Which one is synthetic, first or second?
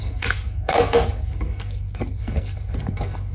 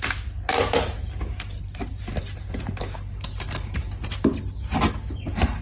first